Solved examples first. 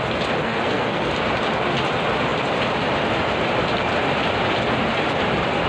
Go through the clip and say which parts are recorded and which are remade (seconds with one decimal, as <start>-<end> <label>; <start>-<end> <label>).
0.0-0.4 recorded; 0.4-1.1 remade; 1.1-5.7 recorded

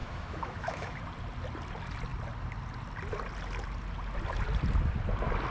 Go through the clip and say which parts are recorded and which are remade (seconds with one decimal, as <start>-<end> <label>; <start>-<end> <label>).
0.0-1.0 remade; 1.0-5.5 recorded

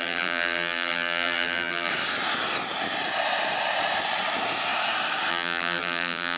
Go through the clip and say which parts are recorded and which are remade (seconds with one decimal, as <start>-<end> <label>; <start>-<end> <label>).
0.0-1.9 remade; 1.9-5.3 recorded; 5.3-6.4 remade

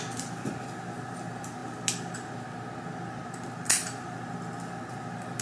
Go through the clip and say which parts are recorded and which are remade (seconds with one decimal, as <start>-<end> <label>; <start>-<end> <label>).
0.0-5.4 recorded

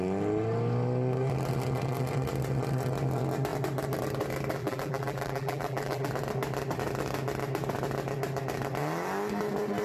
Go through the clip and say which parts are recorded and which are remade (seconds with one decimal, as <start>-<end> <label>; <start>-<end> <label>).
0.0-4.6 recorded; 4.6-6.1 remade; 6.1-9.8 recorded